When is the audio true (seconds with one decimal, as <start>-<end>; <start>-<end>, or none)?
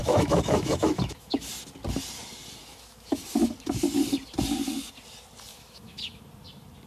1.5-2.6; 3.2-5.5; 6.2-6.9